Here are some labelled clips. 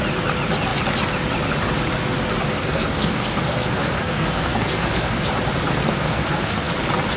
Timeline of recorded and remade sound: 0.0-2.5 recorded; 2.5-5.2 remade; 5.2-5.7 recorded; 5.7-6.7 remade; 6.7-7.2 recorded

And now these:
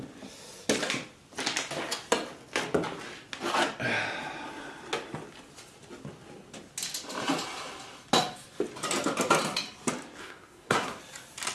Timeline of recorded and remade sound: 0.0-10.2 recorded; 10.2-11.0 remade; 11.0-11.5 recorded